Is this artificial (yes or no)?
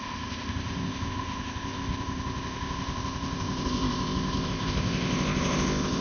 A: yes